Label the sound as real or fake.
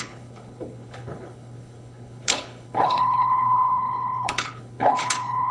fake